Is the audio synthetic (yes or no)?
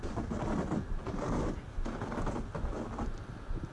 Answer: no